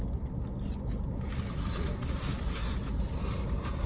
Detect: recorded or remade recorded